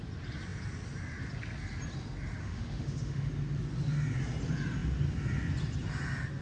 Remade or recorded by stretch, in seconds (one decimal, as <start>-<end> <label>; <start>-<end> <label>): 0.0-2.4 recorded; 2.4-3.3 remade; 3.3-6.4 recorded